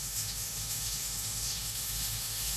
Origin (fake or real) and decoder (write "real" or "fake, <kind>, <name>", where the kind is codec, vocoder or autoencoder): fake, autoencoder, DAC-VAE